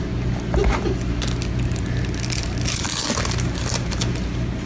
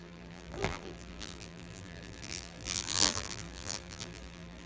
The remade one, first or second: second